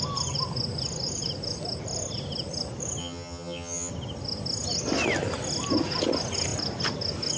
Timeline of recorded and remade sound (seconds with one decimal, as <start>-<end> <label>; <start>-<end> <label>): 0.0-3.0 recorded; 3.0-3.9 remade; 3.9-7.4 recorded